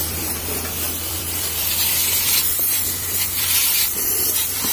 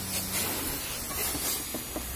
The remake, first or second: first